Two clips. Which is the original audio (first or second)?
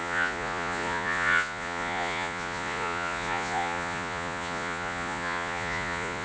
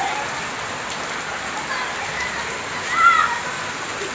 second